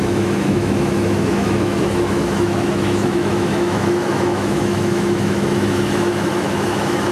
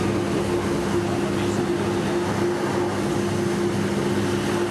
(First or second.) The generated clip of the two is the first